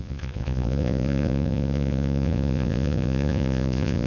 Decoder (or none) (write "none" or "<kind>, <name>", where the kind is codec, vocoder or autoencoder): vocoder, Vocos